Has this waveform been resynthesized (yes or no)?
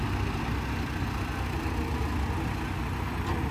no